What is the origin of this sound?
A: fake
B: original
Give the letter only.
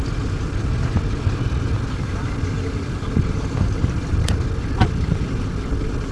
B